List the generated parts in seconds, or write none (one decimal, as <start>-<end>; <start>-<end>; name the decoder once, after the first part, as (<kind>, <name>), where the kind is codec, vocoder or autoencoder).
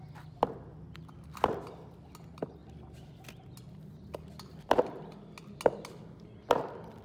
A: none